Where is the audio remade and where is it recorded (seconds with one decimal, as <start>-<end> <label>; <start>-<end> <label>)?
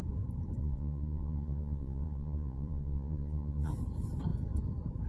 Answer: 0.0-0.6 recorded; 0.6-3.7 remade; 3.7-5.1 recorded